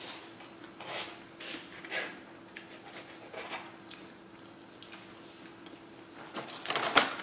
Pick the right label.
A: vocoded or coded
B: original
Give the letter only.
B